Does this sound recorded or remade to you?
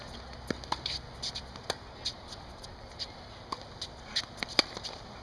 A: recorded